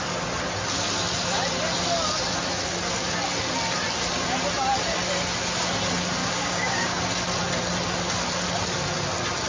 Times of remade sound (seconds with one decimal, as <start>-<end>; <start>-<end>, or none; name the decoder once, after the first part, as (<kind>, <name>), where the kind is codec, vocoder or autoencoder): 6.2-7.0 (codec, DAC)